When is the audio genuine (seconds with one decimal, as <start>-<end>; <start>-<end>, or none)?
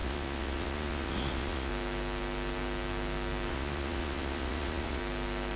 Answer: 1.7-3.5; 5.0-5.6